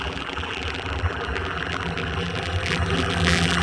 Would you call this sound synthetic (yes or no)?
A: yes